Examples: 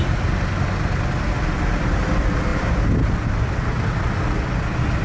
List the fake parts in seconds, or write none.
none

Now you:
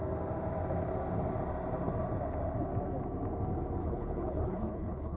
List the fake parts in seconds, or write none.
3.8-5.2 (codec, HILCodec)